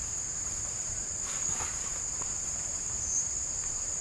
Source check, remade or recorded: remade